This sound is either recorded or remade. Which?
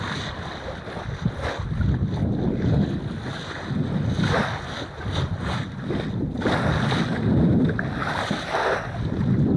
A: recorded